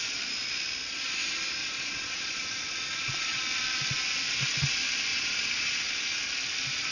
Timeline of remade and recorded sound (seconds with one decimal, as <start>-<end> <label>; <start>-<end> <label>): 0.0-1.6 recorded; 1.6-3.4 remade; 3.4-5.1 recorded; 5.1-6.2 remade; 6.2-6.9 recorded